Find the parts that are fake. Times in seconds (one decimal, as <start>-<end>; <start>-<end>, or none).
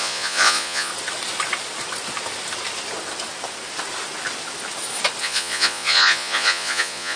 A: 0.0-0.9; 5.2-7.2